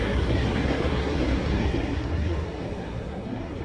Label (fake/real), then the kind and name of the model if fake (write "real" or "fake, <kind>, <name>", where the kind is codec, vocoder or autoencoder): fake, codec, SNAC